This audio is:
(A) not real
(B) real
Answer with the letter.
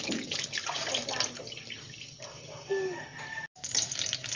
B